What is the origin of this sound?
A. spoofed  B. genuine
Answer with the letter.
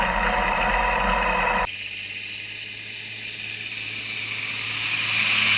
B